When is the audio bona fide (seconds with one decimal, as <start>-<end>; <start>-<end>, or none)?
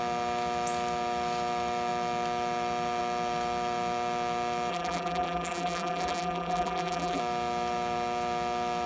0.0-4.7; 7.2-8.9